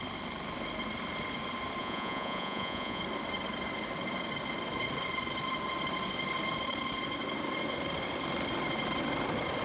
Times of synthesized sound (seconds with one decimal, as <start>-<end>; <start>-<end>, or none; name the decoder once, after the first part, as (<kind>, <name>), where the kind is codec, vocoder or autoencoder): 1.8-3.0 (vocoder, Vocos)